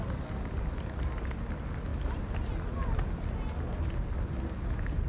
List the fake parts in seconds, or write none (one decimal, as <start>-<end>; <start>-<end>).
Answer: none